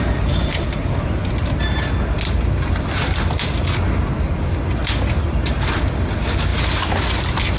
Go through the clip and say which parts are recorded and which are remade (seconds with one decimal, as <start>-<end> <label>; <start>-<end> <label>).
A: 0.0-7.6 recorded